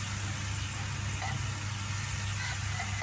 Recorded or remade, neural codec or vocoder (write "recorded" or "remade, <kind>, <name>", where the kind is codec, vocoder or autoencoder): recorded